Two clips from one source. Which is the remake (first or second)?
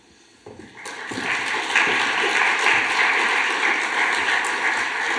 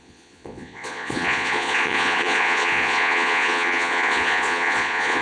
second